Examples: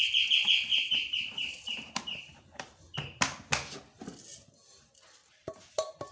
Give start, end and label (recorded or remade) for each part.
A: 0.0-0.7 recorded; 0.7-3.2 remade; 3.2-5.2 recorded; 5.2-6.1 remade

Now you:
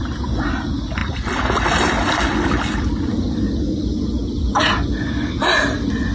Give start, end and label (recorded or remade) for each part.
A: 0.0-6.1 recorded